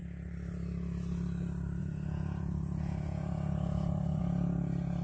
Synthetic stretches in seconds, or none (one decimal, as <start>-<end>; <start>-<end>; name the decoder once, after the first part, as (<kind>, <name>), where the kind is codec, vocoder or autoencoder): 1.8-4.2 (vocoder, Vocos)